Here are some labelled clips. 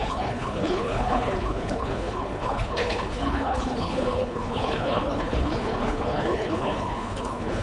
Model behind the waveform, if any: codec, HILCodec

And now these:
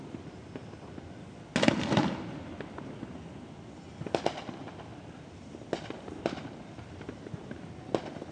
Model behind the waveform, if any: none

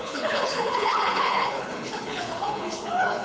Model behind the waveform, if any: codec, HILCodec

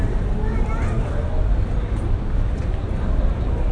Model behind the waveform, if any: none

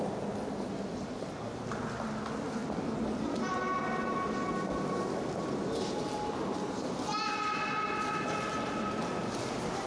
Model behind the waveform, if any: none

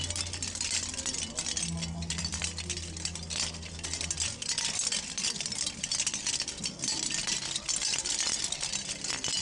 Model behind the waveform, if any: none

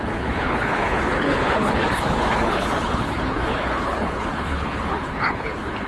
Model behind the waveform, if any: codec, HILCodec